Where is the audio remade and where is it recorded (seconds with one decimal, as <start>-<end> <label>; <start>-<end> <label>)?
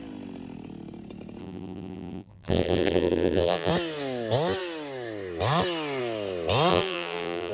0.0-1.4 recorded; 1.4-3.7 remade; 3.7-6.7 recorded; 6.7-7.5 remade